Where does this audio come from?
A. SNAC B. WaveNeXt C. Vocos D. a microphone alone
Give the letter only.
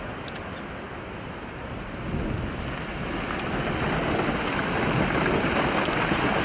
D